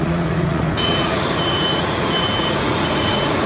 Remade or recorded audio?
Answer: remade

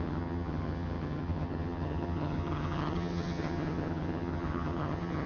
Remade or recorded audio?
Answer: remade